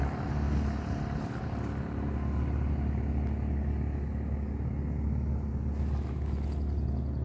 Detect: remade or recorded recorded